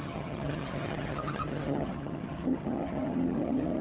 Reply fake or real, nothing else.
fake